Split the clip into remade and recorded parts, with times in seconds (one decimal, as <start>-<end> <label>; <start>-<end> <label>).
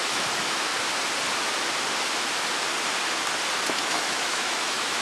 0.0-0.7 remade; 0.7-3.7 recorded; 3.7-5.0 remade